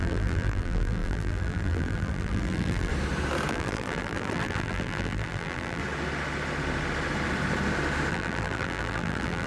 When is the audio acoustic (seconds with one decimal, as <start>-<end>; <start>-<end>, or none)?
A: 2.9-3.5; 5.8-8.1